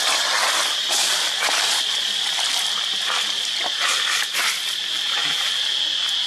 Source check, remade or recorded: recorded